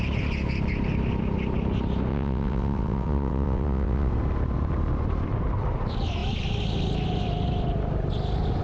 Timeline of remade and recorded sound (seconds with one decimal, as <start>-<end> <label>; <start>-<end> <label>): 0.0-2.1 recorded; 2.1-4.1 remade; 4.1-8.6 recorded

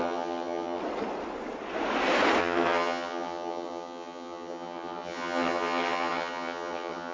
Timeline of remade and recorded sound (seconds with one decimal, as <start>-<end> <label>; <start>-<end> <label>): 0.0-0.8 remade; 0.8-2.4 recorded; 2.4-7.1 remade

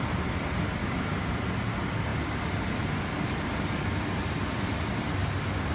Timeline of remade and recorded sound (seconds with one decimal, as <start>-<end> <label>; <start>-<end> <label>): 0.0-0.8 recorded; 0.8-1.3 remade; 1.3-5.7 recorded

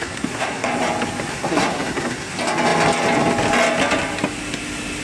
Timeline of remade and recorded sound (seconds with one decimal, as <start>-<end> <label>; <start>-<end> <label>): 0.0-0.7 remade; 0.7-1.3 recorded; 1.3-2.3 remade; 2.3-5.0 recorded

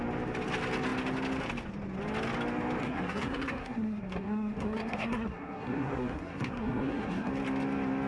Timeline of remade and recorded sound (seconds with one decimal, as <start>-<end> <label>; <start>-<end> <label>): 0.0-2.8 recorded; 2.8-7.3 remade; 7.3-8.1 recorded

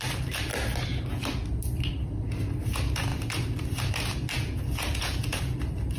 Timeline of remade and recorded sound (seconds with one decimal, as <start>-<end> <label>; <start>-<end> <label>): 0.0-4.4 recorded; 4.4-5.4 remade; 5.4-6.0 recorded

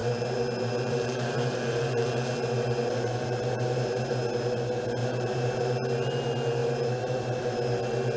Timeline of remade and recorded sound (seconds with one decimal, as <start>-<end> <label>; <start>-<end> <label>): 0.0-4.1 remade; 4.1-5.0 recorded; 5.0-5.6 remade; 5.6-6.6 recorded; 6.6-7.4 remade; 7.4-8.2 recorded